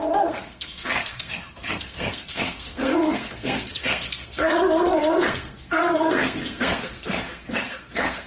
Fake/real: fake